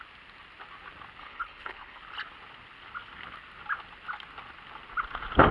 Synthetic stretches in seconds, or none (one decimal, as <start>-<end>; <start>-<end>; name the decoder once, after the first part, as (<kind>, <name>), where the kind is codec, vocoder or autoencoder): 1.2-2.0 (codec, HILCodec)